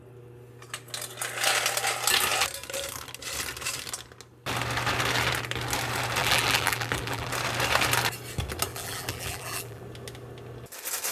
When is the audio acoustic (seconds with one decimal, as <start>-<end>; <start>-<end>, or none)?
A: 0.0-6.2; 7.3-8.7; 9.8-11.1